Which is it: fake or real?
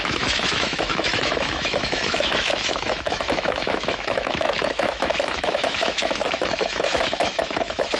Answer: fake